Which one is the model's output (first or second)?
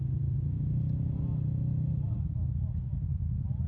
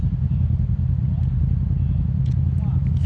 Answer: first